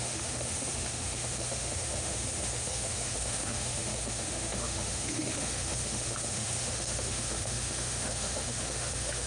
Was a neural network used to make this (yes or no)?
yes